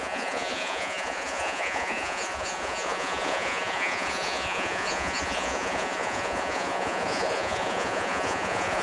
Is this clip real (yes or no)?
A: no